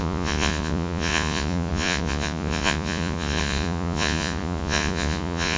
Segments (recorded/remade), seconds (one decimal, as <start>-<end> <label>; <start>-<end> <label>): 0.0-5.6 remade